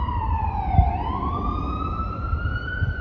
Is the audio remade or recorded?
remade